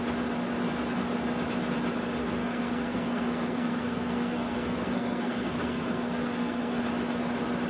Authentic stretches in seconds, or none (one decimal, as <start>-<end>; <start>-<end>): 0.0-2.2; 6.8-7.7